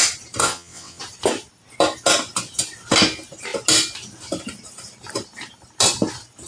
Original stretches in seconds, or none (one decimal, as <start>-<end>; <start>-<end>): 0.0-0.4; 1.0-6.5